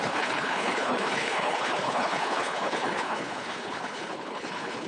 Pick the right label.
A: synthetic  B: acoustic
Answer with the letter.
A